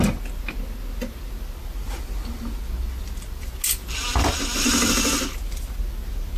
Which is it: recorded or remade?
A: recorded